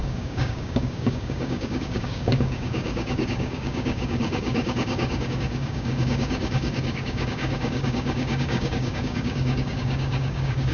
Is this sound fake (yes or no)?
yes